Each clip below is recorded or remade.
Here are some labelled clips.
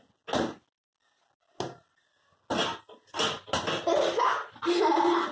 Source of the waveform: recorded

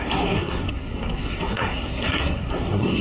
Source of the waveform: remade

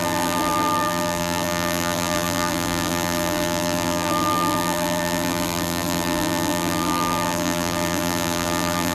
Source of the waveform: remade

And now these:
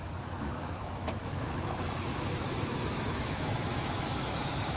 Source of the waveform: remade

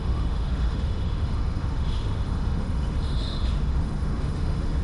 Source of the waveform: remade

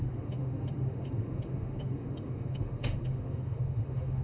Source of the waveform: remade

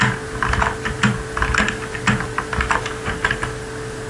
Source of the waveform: recorded